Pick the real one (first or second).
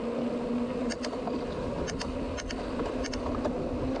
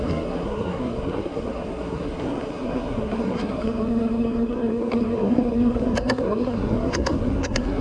first